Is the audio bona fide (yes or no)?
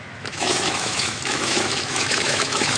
no